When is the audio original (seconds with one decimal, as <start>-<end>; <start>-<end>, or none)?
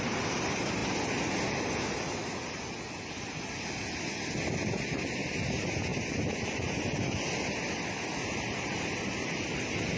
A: 0.0-10.0